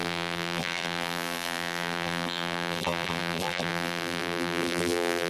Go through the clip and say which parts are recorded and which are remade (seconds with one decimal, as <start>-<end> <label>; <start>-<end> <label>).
0.0-5.3 remade